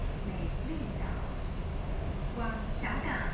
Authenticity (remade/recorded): recorded